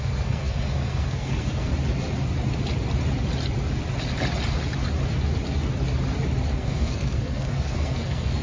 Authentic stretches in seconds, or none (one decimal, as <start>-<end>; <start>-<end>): 1.7-6.5